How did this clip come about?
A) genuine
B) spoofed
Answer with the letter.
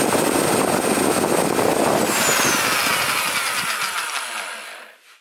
A